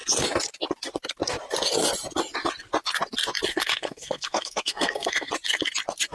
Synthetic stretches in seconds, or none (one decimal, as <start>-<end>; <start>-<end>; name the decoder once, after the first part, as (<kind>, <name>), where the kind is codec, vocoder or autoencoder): 3.5-5.3 (codec, SNAC)